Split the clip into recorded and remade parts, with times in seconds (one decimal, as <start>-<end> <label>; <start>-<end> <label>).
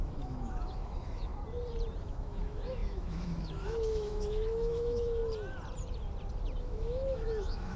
0.0-1.3 remade; 1.3-2.0 recorded; 2.0-5.2 remade; 5.2-6.6 recorded; 6.6-7.8 remade